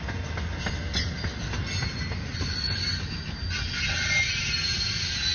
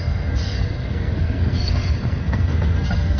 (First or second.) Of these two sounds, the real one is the first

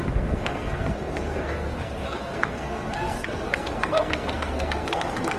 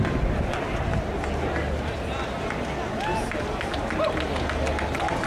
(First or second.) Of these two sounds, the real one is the second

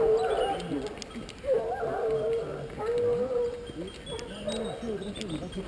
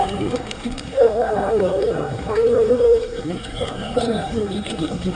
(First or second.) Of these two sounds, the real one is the first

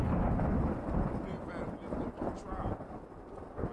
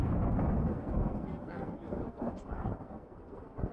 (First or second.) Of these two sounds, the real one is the first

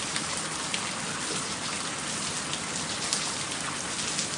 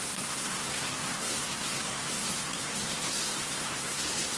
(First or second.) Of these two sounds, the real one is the first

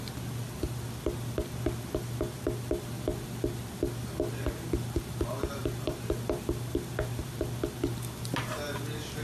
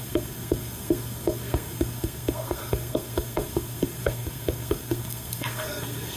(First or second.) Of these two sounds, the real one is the first